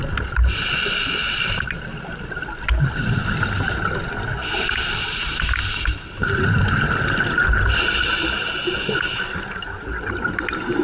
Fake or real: real